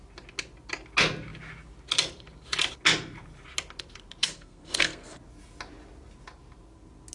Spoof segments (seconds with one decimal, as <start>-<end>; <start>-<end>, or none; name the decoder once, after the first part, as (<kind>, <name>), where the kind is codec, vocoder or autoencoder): 4.2-5.2 (codec, SNAC)